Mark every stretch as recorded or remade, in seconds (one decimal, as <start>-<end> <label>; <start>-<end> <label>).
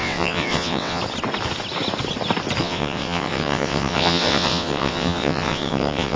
0.0-1.0 remade; 1.0-2.6 recorded; 2.6-6.2 remade